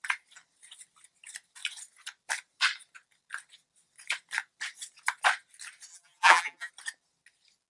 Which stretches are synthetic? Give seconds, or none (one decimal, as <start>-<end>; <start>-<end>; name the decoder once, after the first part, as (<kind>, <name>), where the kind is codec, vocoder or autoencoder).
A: 5.9-6.7 (vocoder, BigVGAN v2)